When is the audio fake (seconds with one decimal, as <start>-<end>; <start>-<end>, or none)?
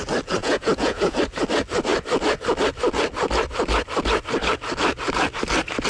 0.4-1.2